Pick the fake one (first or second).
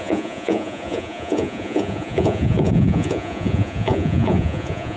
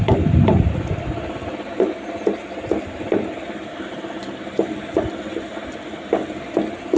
first